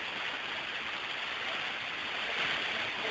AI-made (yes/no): no